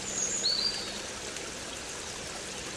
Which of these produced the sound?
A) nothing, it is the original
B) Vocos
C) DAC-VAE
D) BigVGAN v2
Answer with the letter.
A